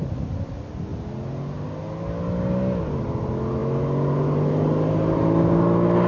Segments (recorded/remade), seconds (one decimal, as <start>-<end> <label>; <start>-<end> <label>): 0.0-6.1 recorded